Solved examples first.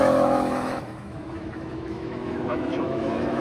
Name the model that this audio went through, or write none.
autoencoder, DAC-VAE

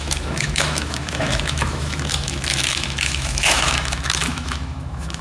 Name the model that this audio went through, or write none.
autoencoder, DAC-VAE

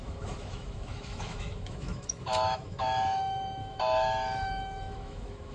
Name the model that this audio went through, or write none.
autoencoder, DAC-VAE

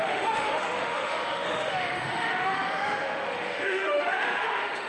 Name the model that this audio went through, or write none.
autoencoder, DAC-VAE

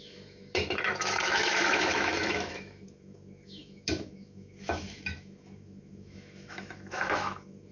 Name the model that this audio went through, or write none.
autoencoder, DAC-VAE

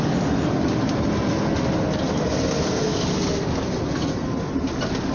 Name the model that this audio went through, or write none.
none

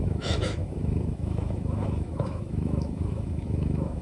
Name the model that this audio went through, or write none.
autoencoder, DAC-VAE